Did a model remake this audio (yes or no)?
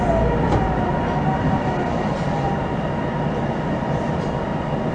no